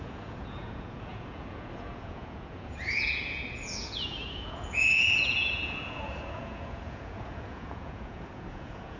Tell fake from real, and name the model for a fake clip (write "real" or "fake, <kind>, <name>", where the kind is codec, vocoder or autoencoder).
fake, vocoder, Vocos